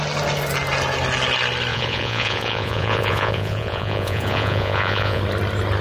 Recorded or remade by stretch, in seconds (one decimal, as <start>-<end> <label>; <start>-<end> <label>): 0.0-1.7 recorded; 1.7-5.2 remade; 5.2-5.8 recorded